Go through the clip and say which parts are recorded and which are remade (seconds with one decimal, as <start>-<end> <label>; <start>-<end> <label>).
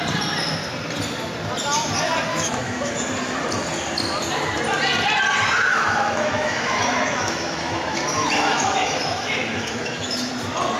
0.0-2.3 recorded; 2.3-2.9 remade; 2.9-5.7 recorded; 5.7-10.3 remade; 10.3-10.8 recorded